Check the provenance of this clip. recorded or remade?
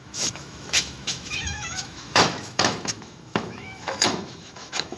remade